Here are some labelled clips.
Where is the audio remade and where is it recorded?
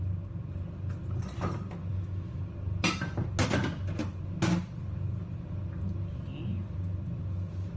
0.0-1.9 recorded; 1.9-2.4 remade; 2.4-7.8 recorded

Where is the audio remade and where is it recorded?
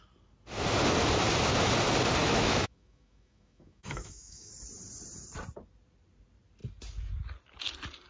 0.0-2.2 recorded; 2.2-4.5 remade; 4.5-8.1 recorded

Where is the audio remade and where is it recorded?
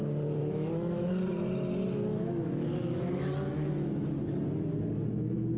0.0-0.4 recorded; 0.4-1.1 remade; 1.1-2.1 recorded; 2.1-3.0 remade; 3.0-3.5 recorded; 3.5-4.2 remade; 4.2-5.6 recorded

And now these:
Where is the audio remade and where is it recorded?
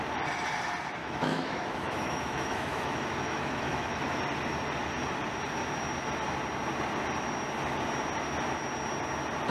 0.0-1.0 recorded; 1.0-4.2 remade; 4.2-9.5 recorded